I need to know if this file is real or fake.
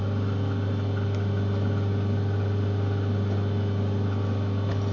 real